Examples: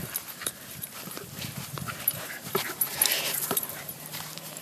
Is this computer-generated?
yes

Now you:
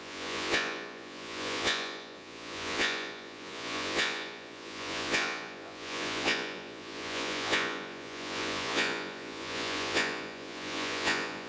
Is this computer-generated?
yes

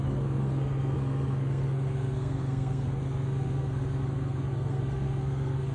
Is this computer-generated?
yes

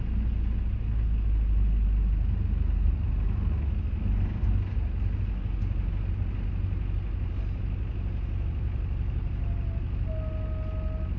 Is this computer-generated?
no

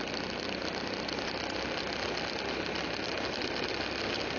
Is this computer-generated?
no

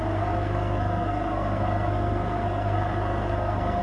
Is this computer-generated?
yes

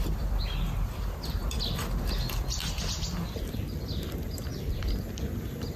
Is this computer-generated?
no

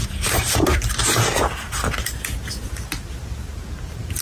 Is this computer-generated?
no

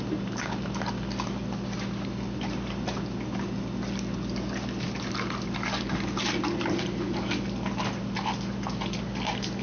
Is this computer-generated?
no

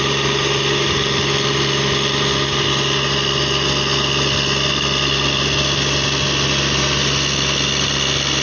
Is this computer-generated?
no